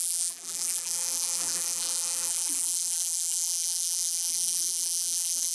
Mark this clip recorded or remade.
remade